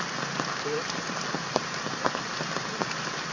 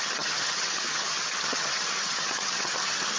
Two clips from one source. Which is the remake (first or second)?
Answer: second